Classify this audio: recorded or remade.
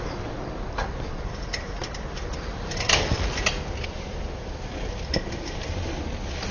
recorded